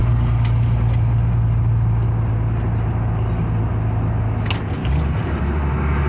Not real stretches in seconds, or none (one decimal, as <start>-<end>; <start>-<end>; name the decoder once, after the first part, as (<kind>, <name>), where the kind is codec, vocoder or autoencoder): 0.0-3.7 (vocoder, BigVGAN v2); 4.8-5.4